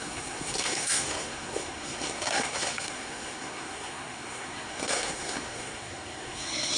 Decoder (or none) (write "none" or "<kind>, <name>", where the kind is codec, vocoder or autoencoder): codec, SNAC